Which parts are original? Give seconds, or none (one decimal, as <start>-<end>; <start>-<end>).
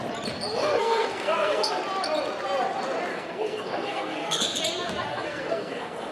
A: 0.0-0.6; 1.7-3.1; 4.6-5.1